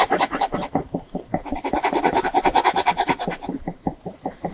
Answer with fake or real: fake